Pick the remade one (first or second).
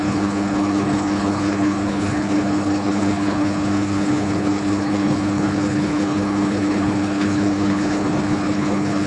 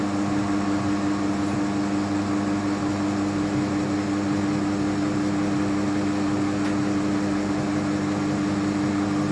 first